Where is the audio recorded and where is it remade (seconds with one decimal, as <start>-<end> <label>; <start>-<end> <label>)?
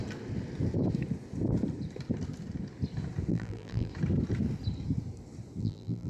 0.0-3.3 recorded; 3.3-3.9 remade; 3.9-5.6 recorded; 5.6-6.1 remade